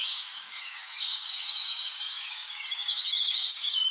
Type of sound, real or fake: fake